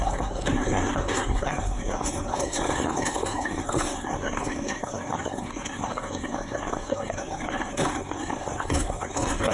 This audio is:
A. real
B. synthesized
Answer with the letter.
B